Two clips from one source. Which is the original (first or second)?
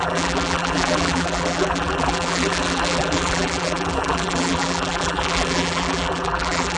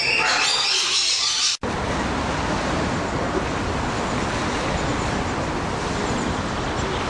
second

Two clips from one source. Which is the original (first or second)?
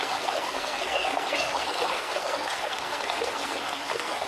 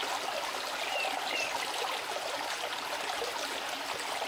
second